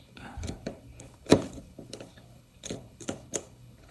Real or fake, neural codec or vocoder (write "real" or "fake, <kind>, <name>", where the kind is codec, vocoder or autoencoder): fake, codec, HILCodec